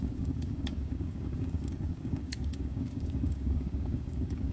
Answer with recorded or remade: remade